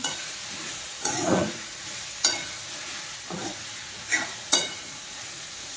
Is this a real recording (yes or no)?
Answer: no